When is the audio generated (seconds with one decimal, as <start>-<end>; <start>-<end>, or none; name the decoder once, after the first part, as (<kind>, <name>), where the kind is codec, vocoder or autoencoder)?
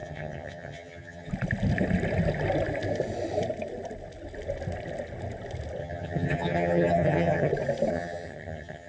0.0-1.3 (vocoder, HiFi-GAN); 5.8-7.5; 7.9-8.9